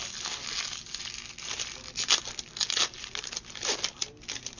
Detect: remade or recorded recorded